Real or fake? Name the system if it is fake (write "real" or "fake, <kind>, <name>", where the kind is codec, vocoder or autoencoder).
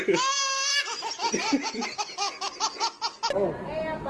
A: real